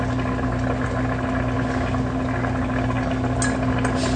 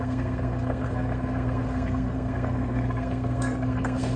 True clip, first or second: first